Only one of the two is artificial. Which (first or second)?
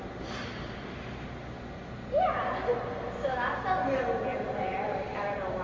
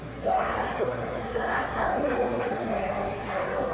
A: second